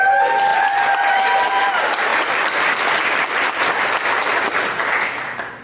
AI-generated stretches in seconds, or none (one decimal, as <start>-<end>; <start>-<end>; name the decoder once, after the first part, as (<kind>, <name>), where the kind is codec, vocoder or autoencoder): none